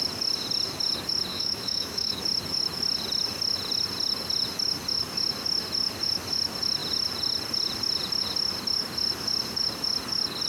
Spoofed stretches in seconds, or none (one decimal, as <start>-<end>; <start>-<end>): 1.3-2.2